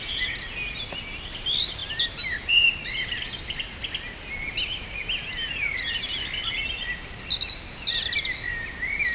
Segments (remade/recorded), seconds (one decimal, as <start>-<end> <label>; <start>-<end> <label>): 0.0-9.1 recorded